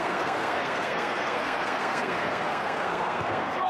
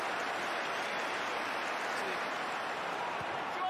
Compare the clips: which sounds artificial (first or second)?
first